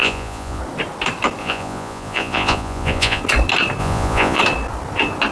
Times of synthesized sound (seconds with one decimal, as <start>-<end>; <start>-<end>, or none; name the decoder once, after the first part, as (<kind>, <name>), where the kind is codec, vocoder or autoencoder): 0.0-0.6 (vocoder, Vocos); 1.4-3.2; 3.8-4.4